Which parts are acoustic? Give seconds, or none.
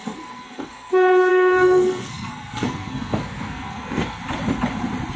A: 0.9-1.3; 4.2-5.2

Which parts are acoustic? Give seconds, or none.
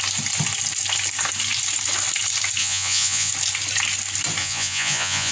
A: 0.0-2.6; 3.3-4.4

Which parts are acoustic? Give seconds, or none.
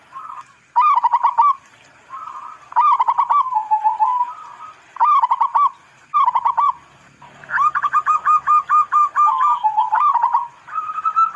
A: 0.0-5.5; 10.1-11.4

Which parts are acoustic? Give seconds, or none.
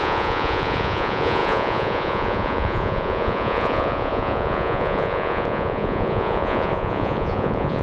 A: none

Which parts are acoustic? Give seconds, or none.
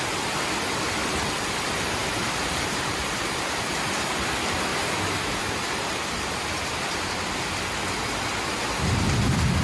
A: 0.0-1.0; 3.5-4.7; 6.3-9.6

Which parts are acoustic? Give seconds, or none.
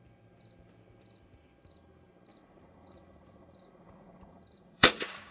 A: 0.0-2.3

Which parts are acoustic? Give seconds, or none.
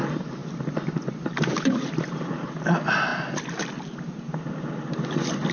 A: 0.0-5.5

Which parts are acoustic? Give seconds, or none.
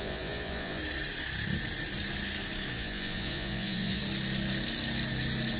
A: 0.8-2.7; 4.0-5.6